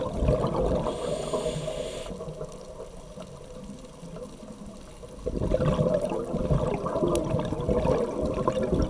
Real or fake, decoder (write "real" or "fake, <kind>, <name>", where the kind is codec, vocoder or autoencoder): real